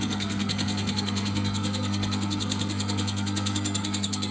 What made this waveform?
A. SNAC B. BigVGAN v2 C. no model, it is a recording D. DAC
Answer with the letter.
A